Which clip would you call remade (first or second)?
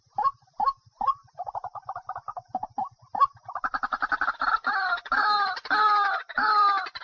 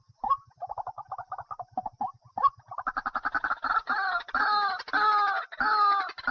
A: first